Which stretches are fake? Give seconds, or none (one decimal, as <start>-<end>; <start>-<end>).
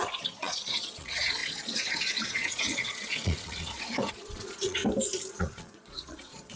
0.0-4.8; 5.3-6.6